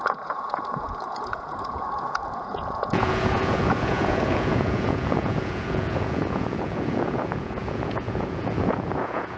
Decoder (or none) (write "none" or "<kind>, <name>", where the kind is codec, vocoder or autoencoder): vocoder, Vocos